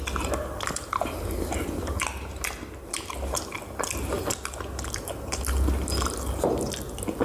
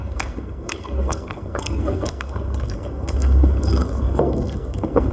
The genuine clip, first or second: first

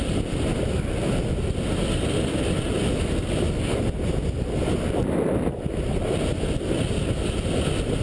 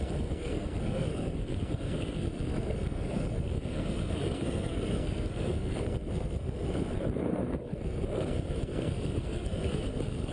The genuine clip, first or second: first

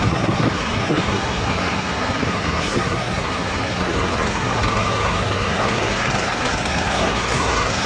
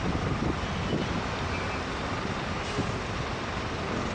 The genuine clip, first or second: second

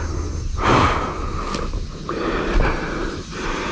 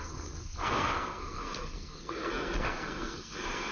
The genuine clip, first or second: first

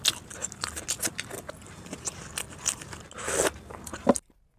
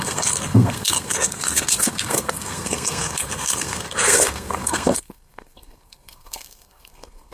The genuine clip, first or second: first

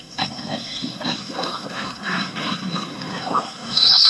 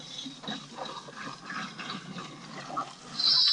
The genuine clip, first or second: second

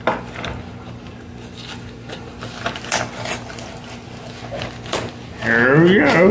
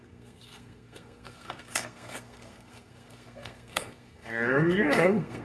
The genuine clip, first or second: first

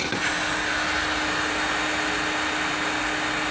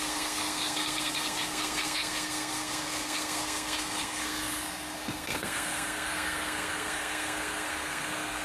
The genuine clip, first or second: first